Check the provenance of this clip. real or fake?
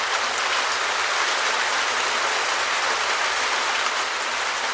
real